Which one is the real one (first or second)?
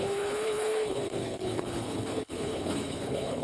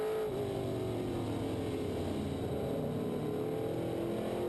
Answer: second